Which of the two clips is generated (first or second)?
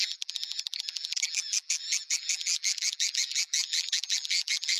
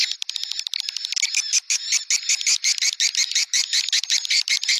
first